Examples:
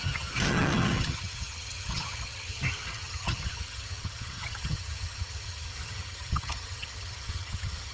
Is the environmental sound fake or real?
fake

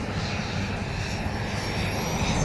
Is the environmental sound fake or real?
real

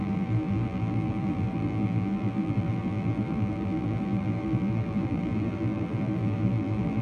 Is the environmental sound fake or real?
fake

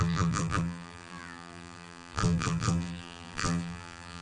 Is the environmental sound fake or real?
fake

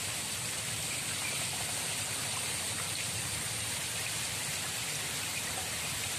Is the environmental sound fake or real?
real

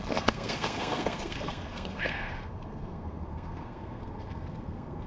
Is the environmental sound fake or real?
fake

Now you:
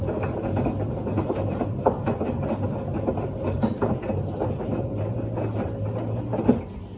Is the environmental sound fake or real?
real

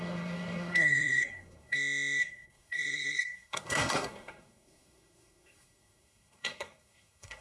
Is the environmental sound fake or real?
fake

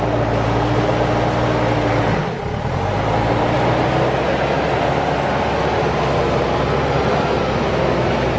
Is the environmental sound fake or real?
real